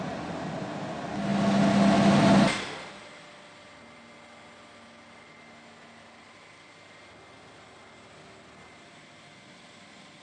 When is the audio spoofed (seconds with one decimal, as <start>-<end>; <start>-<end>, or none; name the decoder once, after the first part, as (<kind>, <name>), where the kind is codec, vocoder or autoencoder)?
none